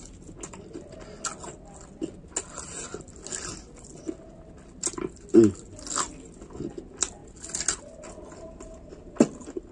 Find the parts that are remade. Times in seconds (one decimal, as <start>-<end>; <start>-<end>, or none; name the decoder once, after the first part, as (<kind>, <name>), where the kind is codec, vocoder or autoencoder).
none